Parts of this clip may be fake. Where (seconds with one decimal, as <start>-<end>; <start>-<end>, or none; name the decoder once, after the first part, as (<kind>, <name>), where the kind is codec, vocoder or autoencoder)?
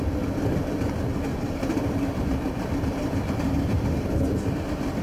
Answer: 1.3-3.9 (vocoder, BigVGAN v2)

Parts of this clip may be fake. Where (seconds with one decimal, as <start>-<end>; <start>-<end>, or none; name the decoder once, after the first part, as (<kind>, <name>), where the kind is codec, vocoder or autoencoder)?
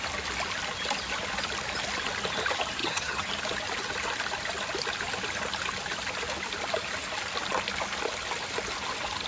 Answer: 2.8-3.3 (vocoder, HiFi-GAN)